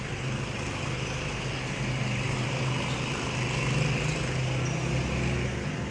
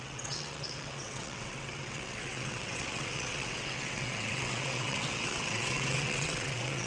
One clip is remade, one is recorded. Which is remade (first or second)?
second